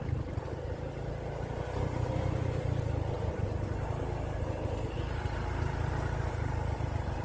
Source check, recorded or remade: recorded